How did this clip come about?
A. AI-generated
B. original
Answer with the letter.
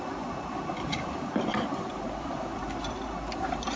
A